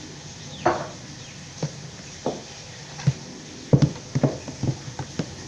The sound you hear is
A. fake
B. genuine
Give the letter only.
B